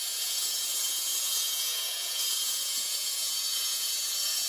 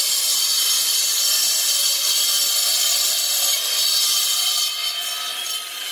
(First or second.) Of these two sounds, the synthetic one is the first